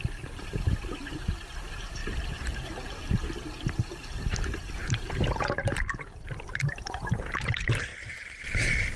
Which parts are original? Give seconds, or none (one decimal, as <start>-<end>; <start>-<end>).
0.0-2.0; 3.1-4.8; 7.5-7.9; 8.4-9.0